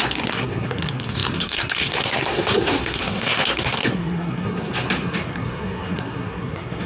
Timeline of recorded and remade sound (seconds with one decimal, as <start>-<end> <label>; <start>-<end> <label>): 0.0-6.9 remade